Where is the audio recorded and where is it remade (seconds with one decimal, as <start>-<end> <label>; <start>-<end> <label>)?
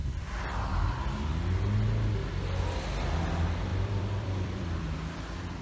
0.0-0.6 remade; 0.6-3.7 recorded; 3.7-4.9 remade; 4.9-5.6 recorded